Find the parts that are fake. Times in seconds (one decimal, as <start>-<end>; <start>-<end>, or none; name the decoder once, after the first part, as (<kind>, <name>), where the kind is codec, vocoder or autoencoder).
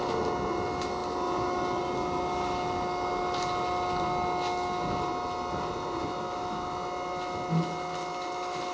none